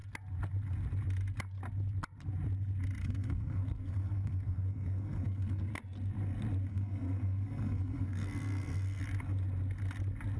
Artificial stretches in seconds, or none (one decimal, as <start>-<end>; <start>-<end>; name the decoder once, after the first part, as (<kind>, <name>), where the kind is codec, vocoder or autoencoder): 3.0-5.7 (codec, SNAC); 6.7-9.0